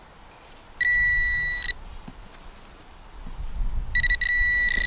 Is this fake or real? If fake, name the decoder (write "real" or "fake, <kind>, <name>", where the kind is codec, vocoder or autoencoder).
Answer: real